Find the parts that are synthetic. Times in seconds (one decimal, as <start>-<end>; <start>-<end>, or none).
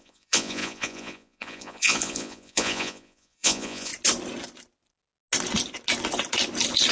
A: 0.0-3.9